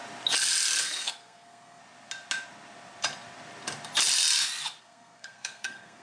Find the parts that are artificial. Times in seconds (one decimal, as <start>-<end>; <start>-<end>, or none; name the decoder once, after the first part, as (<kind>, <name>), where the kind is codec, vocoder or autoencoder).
0.8-1.8 (codec, SNAC); 4.8-6.0